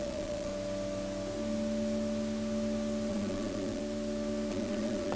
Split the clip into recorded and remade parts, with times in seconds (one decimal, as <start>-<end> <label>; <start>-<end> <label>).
0.0-0.5 remade; 0.5-3.1 recorded; 3.1-3.8 remade; 3.8-4.5 recorded; 4.5-5.2 remade